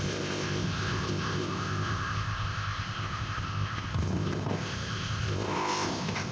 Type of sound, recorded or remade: remade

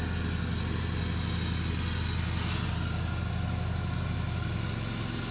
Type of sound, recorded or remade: recorded